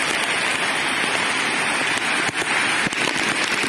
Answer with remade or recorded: recorded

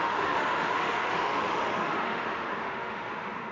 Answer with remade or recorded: remade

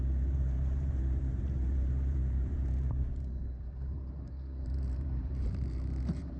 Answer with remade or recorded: remade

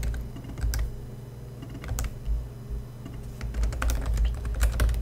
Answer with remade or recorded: recorded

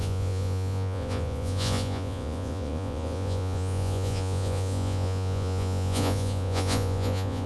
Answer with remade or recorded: remade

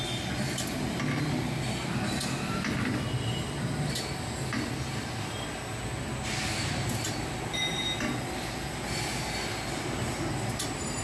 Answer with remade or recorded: recorded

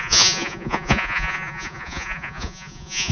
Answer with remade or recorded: remade